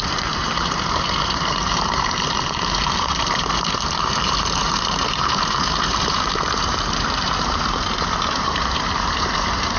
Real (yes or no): no